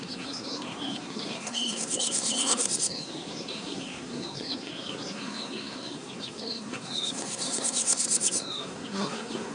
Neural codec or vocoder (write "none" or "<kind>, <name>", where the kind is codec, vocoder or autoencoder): codec, SNAC